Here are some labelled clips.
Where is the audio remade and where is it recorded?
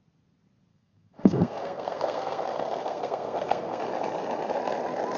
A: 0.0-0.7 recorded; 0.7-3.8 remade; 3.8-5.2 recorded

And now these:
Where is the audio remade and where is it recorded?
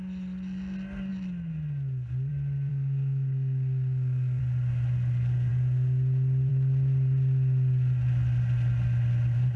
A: 0.0-2.7 recorded; 2.7-4.4 remade; 4.4-9.6 recorded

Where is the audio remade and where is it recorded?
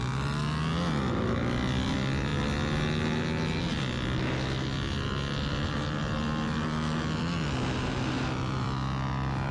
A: 0.0-9.5 recorded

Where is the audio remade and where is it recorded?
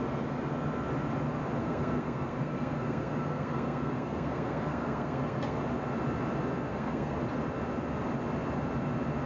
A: 0.0-1.6 recorded; 1.6-5.6 remade; 5.6-6.7 recorded; 6.7-7.2 remade; 7.2-9.3 recorded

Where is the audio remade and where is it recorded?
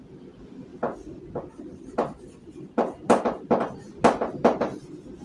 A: 0.0-5.2 recorded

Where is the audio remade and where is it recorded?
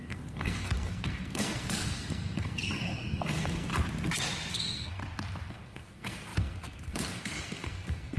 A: 0.0-3.7 remade; 3.7-4.5 recorded; 4.5-5.0 remade; 5.0-5.5 recorded; 5.5-8.2 remade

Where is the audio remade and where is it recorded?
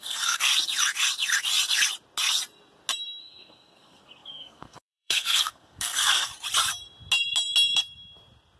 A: 0.0-0.5 remade; 0.5-3.2 recorded; 3.2-6.3 remade; 6.3-8.6 recorded